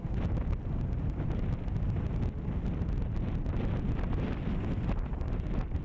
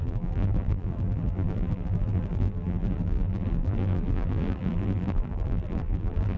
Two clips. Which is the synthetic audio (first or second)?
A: second